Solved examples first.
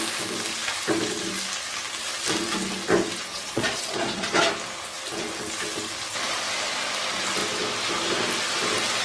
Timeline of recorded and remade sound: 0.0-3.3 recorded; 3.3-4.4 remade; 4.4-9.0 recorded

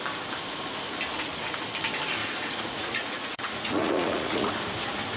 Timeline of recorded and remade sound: 0.0-2.2 recorded; 2.2-4.5 remade; 4.5-5.2 recorded

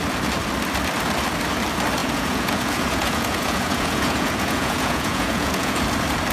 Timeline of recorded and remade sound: 0.0-2.0 recorded; 2.0-5.8 remade; 5.8-6.3 recorded

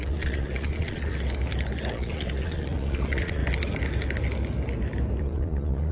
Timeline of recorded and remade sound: 0.0-1.1 remade; 1.1-1.9 recorded; 1.9-3.4 remade; 3.4-5.2 recorded; 5.2-5.9 remade

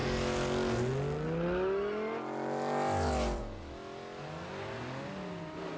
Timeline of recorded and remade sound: 0.0-5.8 recorded